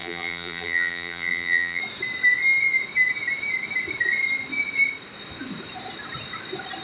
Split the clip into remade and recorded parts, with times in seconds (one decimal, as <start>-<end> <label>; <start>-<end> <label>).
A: 0.0-1.8 remade; 1.8-6.8 recorded